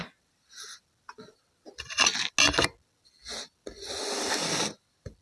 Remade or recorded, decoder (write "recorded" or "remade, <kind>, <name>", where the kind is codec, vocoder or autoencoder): recorded